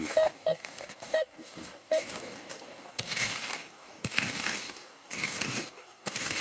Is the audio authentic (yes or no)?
no